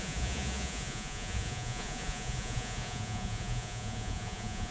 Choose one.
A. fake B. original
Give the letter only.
A